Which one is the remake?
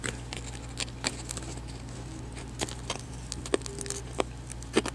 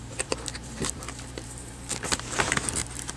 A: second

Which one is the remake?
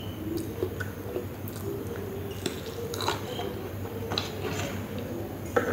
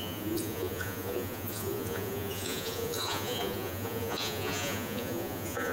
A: second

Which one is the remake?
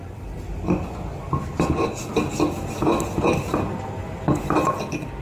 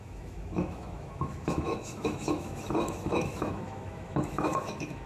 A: second